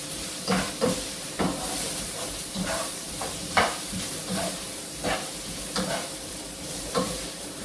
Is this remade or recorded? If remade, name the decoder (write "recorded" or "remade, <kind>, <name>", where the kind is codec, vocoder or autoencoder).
remade, vocoder, BigVGAN v2